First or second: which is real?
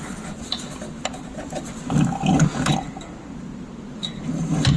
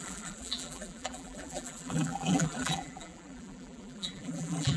first